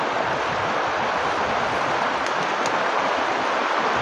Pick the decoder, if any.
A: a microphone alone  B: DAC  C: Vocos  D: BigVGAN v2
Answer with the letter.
A